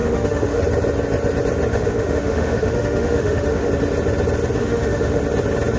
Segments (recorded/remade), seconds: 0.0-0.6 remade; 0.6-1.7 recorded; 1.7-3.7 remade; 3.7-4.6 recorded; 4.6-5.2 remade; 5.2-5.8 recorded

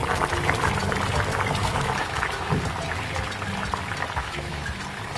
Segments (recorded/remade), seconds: 0.0-1.6 recorded; 1.6-2.5 remade; 2.5-4.2 recorded; 4.2-4.8 remade; 4.8-5.2 recorded

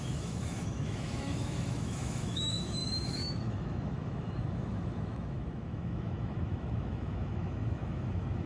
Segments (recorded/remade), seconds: 0.0-8.5 remade

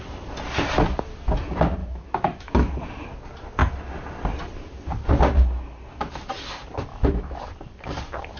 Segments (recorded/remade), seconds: 0.0-1.8 recorded; 1.8-2.7 remade; 2.7-6.9 recorded; 6.9-7.4 remade; 7.4-8.4 recorded

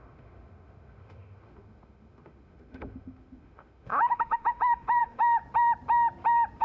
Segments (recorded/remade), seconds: 0.0-5.4 remade; 5.4-6.6 recorded